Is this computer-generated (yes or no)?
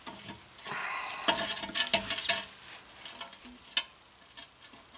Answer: no